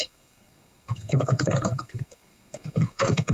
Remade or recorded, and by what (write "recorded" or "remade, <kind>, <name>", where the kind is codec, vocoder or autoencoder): remade, codec, SNAC